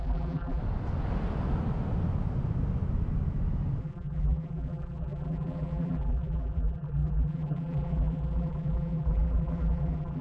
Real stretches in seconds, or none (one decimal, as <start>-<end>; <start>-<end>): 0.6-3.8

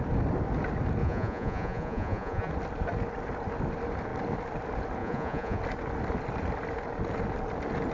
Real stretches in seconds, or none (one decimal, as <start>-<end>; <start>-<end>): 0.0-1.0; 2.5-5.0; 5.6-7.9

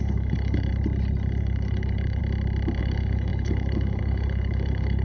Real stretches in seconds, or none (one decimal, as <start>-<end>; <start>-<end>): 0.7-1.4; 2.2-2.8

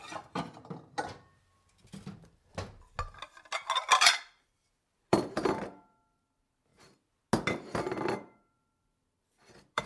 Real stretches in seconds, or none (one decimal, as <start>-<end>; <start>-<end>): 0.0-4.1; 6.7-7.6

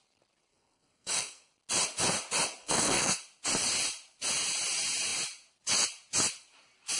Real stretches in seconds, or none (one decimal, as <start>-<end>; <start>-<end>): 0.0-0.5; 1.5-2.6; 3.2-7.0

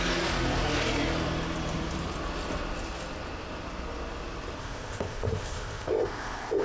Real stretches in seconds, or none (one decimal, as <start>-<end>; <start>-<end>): 0.0-4.6

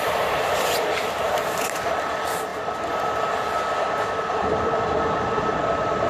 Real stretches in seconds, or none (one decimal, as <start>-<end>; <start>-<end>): none

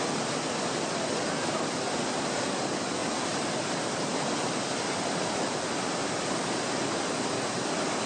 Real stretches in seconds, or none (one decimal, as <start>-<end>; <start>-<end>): 0.0-8.1